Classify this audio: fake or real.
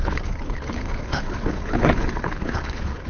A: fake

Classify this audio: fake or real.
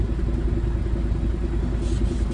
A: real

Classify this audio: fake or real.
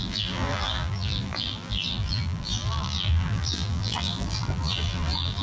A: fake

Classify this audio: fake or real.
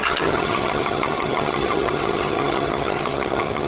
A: fake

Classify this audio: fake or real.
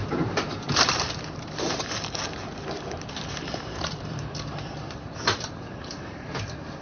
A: fake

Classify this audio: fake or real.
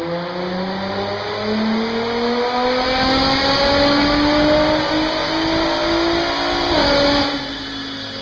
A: real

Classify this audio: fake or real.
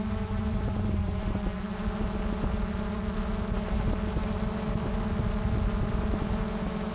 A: real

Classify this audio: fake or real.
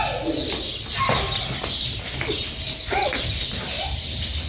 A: real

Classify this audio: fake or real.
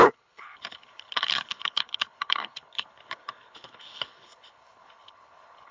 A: fake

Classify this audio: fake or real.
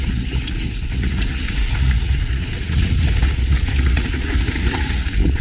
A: fake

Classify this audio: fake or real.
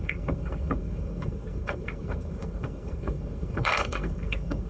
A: fake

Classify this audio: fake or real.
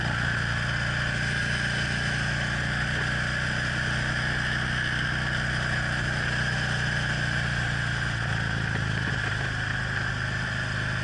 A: real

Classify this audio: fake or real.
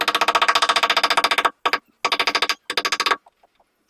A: real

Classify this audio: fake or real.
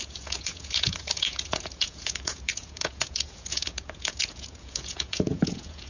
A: fake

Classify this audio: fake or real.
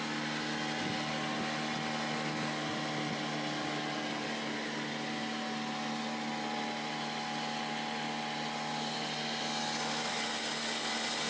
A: real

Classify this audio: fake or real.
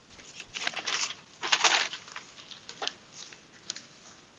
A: real